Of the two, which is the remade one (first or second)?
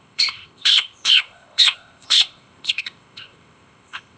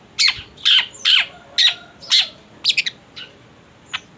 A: first